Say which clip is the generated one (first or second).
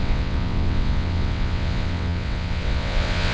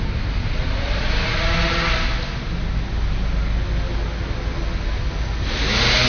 first